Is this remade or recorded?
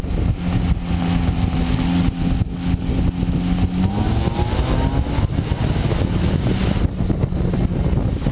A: recorded